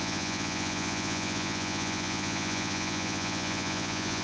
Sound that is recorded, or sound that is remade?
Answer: remade